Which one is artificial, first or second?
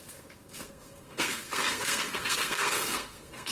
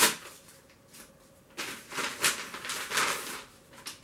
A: first